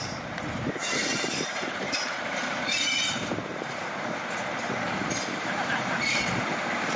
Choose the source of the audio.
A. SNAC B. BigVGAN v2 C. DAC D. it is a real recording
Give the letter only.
B